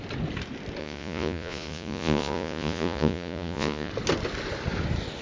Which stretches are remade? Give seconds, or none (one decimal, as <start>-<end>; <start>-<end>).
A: 0.8-3.9